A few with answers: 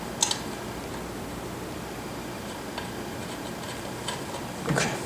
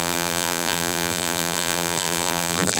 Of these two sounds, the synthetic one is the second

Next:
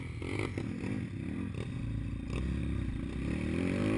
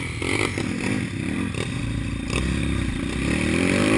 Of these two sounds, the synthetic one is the second